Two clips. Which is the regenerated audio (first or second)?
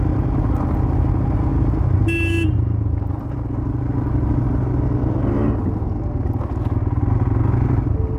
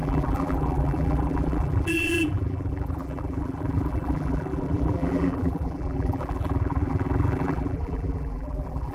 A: second